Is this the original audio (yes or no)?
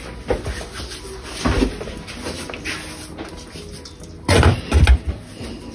yes